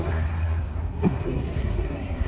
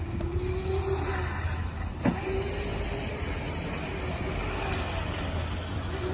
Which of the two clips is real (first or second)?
second